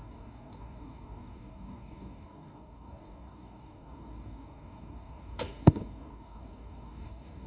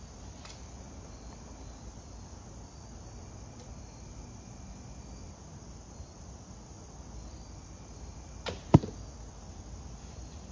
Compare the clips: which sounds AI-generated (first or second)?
first